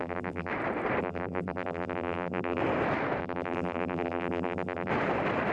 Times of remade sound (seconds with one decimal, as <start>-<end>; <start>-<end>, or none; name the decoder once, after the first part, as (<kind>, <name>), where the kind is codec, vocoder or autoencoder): 0.0-0.5 (vocoder, BigVGAN v2); 1.0-2.6; 3.2-4.9